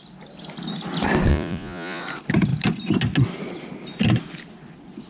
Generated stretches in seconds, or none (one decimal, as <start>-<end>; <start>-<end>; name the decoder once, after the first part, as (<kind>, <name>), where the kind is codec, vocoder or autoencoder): 1.3-2.0 (vocoder, Vocos)